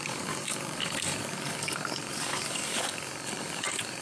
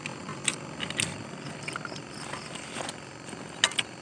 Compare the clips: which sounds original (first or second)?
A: second